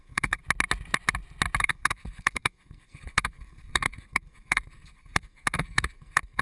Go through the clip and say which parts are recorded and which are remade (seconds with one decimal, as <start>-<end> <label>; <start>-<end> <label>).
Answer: 0.0-0.4 remade; 0.4-1.6 recorded; 1.6-6.4 remade